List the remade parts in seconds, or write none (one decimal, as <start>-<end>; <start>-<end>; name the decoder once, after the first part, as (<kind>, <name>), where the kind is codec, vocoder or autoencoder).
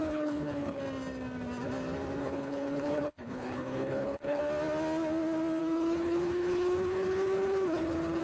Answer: 0.0-0.8 (codec, HILCodec); 2.2-4.4; 5.6-8.2